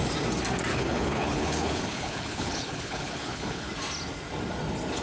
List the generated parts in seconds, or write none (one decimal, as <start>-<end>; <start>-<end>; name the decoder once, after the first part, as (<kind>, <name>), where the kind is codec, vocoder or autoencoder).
0.7-3.7 (codec, HILCodec)